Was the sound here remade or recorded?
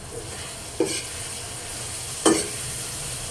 recorded